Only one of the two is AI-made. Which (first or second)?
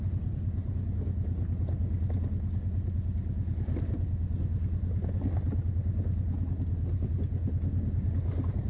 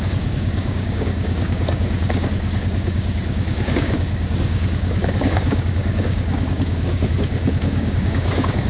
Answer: second